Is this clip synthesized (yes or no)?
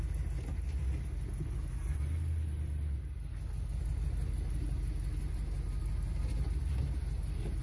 no